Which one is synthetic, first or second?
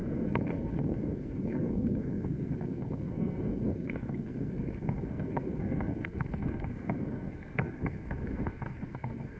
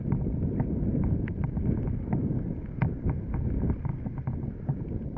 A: first